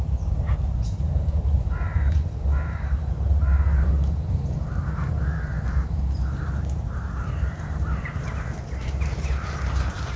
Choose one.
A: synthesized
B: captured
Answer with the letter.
A